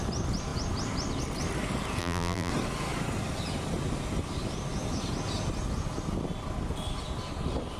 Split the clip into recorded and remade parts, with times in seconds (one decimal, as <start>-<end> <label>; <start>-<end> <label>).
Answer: 0.0-2.0 recorded; 2.0-2.5 remade; 2.5-7.8 recorded